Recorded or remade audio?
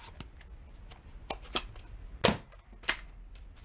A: recorded